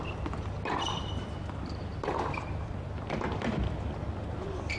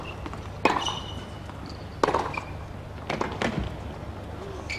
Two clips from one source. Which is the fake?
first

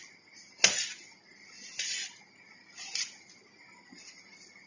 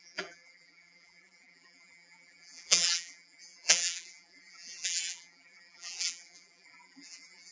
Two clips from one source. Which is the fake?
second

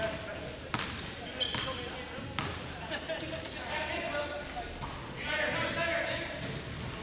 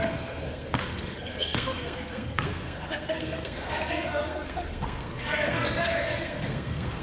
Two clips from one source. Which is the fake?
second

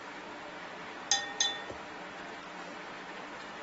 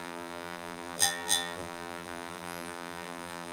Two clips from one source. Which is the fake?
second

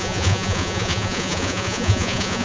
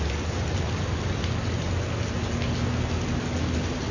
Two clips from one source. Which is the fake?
first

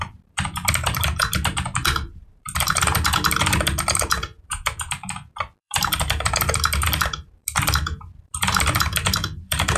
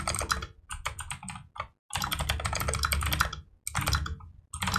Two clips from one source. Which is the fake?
first